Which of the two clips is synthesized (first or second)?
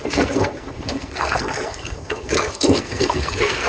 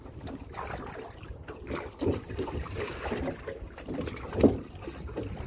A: first